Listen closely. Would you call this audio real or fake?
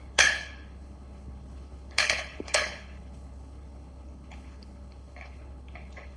fake